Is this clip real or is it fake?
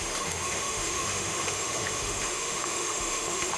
fake